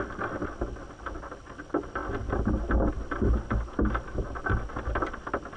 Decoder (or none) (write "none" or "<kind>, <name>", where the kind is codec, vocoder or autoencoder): none